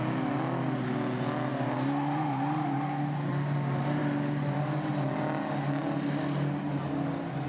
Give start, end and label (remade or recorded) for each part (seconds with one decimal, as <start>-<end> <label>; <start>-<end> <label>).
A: 0.0-7.5 recorded